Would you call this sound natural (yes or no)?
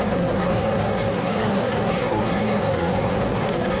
no